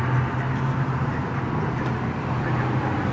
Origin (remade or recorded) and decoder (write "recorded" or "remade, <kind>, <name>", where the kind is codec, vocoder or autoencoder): recorded